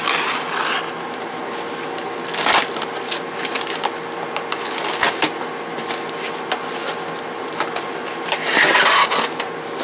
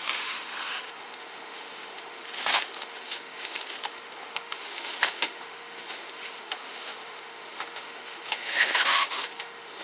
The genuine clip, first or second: first